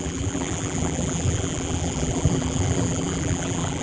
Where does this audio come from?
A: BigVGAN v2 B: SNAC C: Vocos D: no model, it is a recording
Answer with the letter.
A